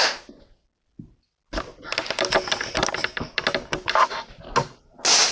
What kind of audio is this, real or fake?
real